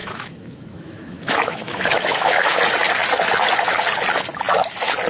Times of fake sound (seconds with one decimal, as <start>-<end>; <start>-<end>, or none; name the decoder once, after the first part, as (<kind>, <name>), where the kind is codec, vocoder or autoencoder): 0.0-2.6 (autoencoder, DAC-VAE)